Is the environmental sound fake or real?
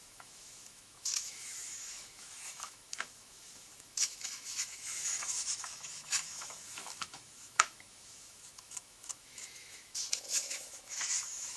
fake